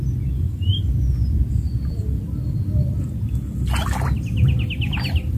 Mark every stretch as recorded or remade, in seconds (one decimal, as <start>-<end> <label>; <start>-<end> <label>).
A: 0.0-1.1 recorded; 1.1-3.3 remade; 3.3-5.4 recorded